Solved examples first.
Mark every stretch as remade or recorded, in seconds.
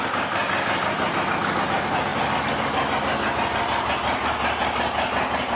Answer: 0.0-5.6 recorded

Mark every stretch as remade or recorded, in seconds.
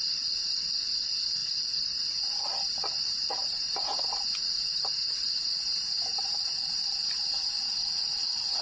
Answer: 0.0-8.6 recorded